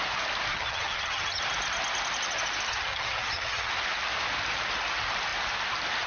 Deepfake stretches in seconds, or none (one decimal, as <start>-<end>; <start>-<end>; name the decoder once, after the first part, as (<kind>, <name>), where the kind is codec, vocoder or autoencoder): 0.5-1.4 (vocoder, HiFi-GAN); 2.7-3.7